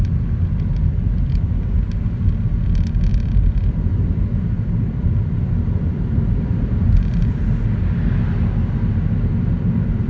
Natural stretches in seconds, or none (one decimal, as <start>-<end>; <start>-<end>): 0.0-3.1; 7.3-10.1